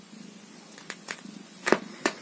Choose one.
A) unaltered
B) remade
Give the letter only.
B